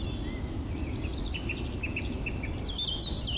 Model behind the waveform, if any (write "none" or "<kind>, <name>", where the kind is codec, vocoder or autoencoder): none